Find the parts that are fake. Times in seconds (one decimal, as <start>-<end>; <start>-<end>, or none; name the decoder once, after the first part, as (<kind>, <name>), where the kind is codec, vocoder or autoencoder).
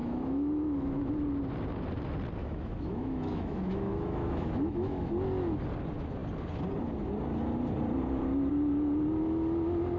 0.0-1.1 (autoencoder, DAC-VAE); 2.4-5.1